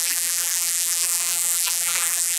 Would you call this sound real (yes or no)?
no